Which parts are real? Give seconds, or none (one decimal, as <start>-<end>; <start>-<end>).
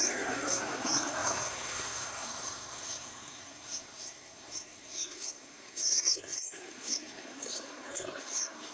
none